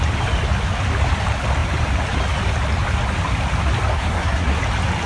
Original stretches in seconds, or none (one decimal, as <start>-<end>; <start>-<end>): 0.0-3.9; 4.6-5.1